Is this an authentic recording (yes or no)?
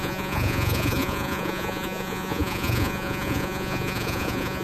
no